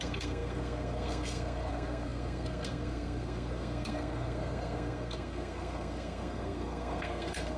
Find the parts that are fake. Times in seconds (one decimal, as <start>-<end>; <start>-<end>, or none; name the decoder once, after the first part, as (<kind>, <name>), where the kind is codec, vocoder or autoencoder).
0.0-7.6 (codec, SNAC)